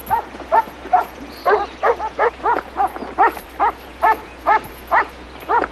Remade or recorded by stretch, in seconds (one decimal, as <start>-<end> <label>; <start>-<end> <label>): 0.0-1.4 remade; 1.4-2.0 recorded; 2.0-3.0 remade; 3.0-3.7 recorded; 3.7-5.7 remade

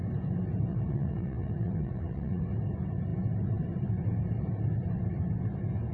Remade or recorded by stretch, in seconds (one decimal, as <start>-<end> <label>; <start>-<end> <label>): 0.0-0.7 recorded; 0.7-2.4 remade; 2.4-5.9 recorded

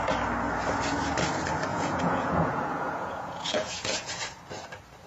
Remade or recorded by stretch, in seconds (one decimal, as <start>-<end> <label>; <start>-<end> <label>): 0.0-1.7 recorded; 1.7-4.1 remade; 4.1-5.1 recorded

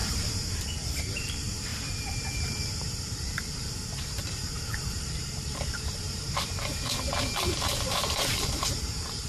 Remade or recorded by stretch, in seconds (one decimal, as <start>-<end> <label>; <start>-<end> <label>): 0.0-9.3 remade